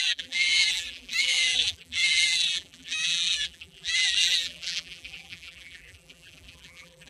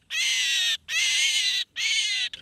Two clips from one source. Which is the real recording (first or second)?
second